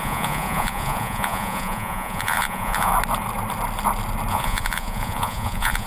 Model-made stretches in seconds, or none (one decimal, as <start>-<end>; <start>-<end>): 0.0-2.9; 4.3-5.9